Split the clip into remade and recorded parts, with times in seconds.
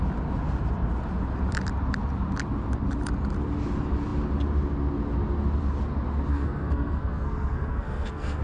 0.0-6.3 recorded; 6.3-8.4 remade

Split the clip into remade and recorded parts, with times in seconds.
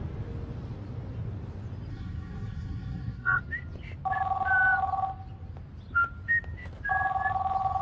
0.0-1.9 recorded; 1.9-3.4 remade; 3.4-7.8 recorded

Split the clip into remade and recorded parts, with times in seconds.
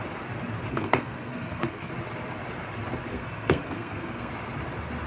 0.0-0.7 recorded; 0.7-1.9 remade; 1.9-3.1 recorded; 3.1-4.3 remade; 4.3-5.1 recorded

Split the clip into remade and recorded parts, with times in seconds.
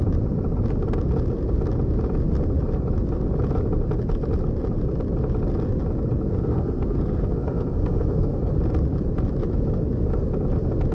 0.0-6.3 recorded; 6.3-8.5 remade; 8.5-10.9 recorded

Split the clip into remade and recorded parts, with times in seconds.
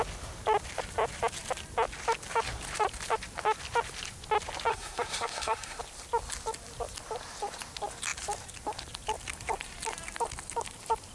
0.0-4.7 recorded; 4.7-5.8 remade; 5.8-11.1 recorded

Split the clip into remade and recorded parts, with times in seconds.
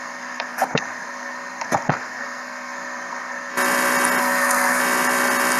0.0-3.5 remade; 3.5-4.2 recorded; 4.2-4.8 remade; 4.8-5.6 recorded